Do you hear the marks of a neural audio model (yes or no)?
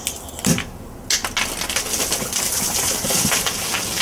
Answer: no